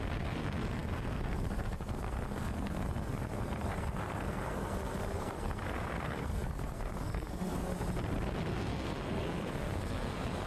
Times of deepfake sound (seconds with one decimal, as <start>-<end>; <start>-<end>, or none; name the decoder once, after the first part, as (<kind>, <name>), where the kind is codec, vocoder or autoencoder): 0.0-7.7 (codec, SNAC); 8.4-10.5